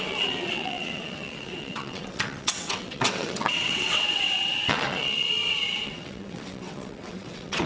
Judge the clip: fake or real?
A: fake